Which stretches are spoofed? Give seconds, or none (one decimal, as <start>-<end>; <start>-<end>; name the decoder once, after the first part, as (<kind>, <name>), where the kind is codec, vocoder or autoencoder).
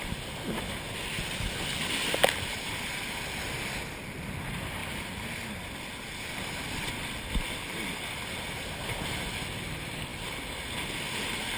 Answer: none